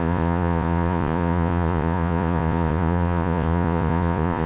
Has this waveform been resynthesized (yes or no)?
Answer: yes